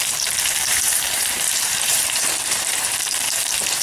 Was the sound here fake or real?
fake